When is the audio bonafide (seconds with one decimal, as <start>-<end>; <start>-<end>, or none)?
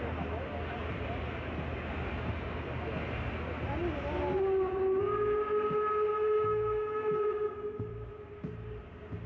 0.0-6.1; 8.1-9.3